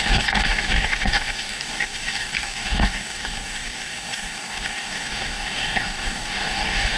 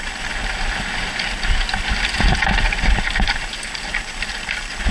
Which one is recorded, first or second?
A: second